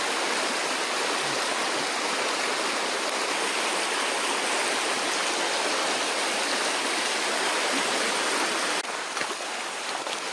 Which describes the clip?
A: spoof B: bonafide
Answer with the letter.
B